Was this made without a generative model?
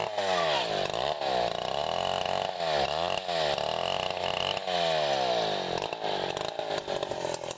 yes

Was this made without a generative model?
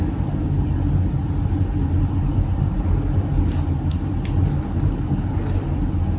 yes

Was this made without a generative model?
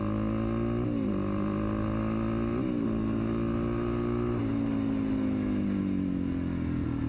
yes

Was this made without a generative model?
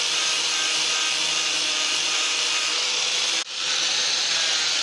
no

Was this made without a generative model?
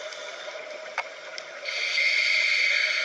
yes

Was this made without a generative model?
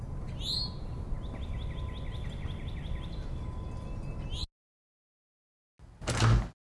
yes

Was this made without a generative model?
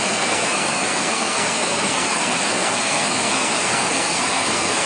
no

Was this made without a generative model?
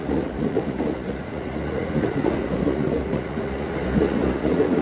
no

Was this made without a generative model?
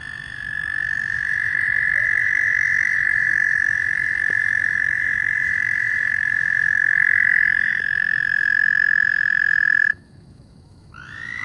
no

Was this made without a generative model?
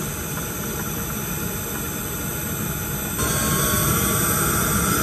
yes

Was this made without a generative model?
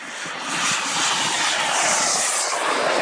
yes